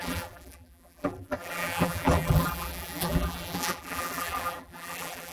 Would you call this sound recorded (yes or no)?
no